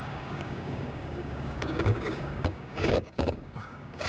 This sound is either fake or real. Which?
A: fake